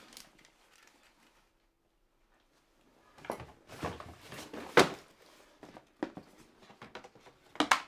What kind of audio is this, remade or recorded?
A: recorded